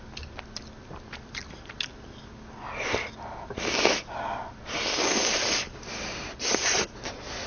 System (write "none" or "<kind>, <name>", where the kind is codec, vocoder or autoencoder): none